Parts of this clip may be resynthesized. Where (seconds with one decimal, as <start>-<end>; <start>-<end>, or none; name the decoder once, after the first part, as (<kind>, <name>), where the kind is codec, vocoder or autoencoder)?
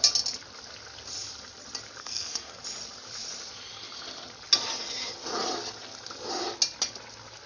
2.0-2.6 (codec, SNAC)